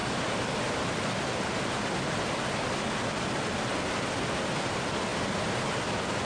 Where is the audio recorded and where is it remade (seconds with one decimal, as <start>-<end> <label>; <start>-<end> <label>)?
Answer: 0.0-6.3 recorded

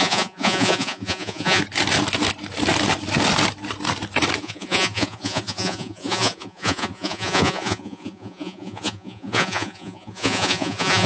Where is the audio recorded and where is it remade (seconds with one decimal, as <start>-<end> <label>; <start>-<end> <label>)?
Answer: 0.0-1.6 remade; 1.6-4.4 recorded; 4.4-11.1 remade

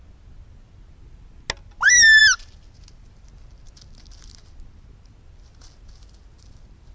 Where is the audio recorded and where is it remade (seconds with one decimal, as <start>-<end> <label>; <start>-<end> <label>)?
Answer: 0.0-6.9 recorded

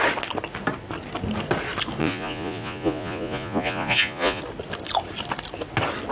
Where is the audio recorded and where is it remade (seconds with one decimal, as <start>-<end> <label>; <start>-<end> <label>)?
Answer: 0.0-2.0 recorded; 2.0-4.4 remade; 4.4-6.1 recorded

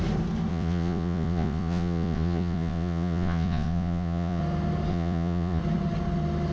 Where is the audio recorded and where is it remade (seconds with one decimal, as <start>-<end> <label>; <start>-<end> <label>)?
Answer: 0.0-0.5 recorded; 0.5-4.4 remade; 4.4-4.9 recorded; 4.9-5.6 remade; 5.6-6.5 recorded

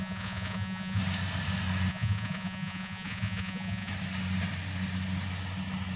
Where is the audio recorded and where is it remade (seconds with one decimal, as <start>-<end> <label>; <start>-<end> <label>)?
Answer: 0.0-1.0 remade; 1.0-1.9 recorded; 1.9-3.9 remade; 3.9-6.0 recorded

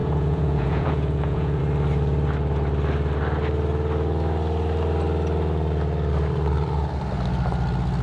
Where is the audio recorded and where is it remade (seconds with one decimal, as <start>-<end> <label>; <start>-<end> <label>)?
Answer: 0.0-1.6 remade; 1.6-8.0 recorded